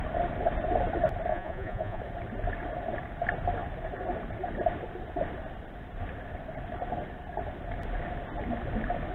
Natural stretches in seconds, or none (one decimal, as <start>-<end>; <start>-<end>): 0.0-1.3; 2.0-9.1